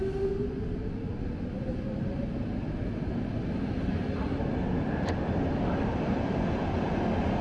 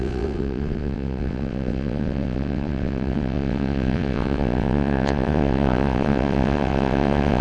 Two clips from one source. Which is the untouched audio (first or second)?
first